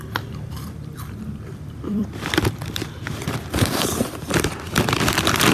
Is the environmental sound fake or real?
fake